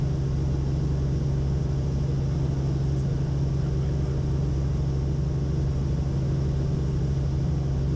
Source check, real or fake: real